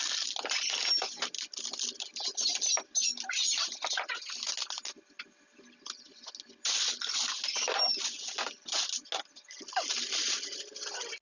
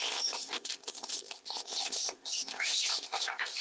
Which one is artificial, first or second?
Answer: second